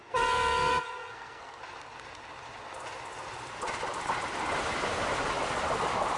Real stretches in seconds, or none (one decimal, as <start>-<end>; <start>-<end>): 1.6-6.2